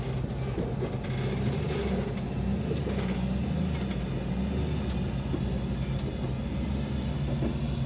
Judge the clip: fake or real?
real